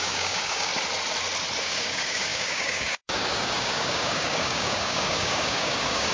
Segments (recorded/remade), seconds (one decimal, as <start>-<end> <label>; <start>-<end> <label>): 0.0-0.7 remade; 0.7-1.6 recorded; 1.6-6.1 remade